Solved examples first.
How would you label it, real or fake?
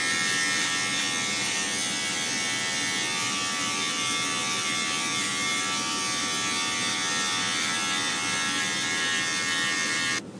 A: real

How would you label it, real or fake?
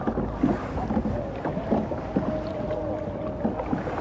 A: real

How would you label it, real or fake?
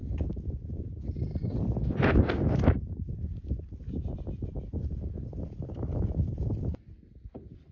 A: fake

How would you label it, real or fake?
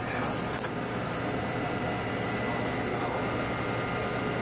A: real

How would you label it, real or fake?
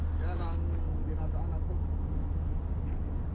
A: real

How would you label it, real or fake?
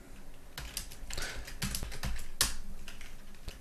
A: real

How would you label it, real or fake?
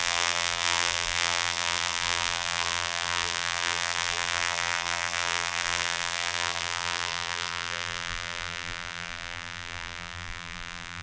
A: fake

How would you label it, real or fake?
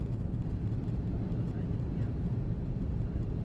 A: fake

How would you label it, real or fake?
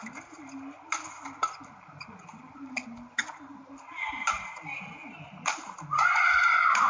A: real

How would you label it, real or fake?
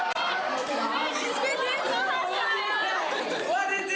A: fake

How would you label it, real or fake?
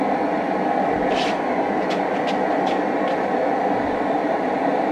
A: fake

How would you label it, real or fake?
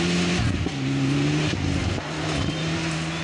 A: real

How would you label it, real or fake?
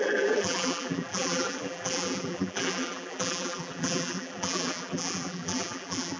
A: fake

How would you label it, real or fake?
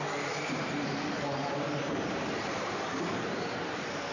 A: fake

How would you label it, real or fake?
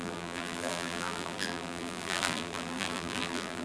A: fake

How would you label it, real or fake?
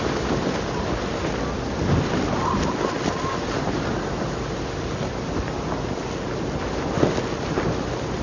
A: real